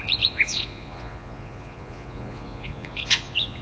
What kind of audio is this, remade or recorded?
remade